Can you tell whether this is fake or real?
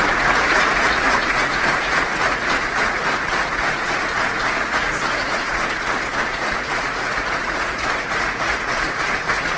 fake